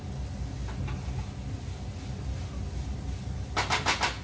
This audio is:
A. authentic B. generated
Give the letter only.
A